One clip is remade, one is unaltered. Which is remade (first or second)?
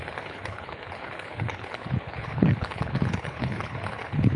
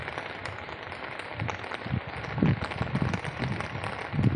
first